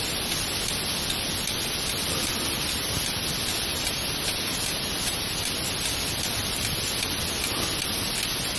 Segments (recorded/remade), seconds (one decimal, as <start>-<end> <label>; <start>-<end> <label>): 0.0-3.7 recorded; 3.7-5.5 remade; 5.5-8.6 recorded